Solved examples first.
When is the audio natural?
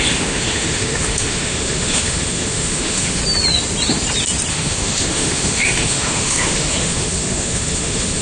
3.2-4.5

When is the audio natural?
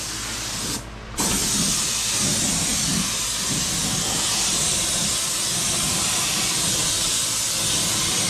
0.0-8.3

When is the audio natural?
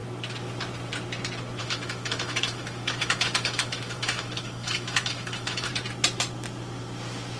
0.0-1.6; 5.7-7.4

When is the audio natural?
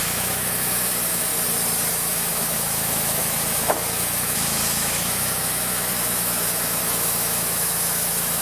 1.3-1.9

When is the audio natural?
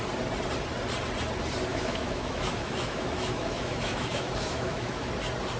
0.0-1.7; 5.1-5.6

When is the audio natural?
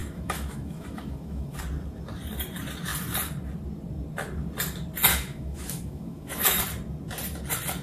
1.6-5.1; 6.6-7.8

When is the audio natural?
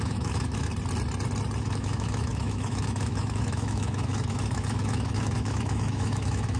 0.7-1.6